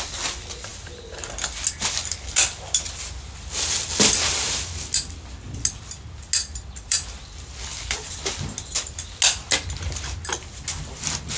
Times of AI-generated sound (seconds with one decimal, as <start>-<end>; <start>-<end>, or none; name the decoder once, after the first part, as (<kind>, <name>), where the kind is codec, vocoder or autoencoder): none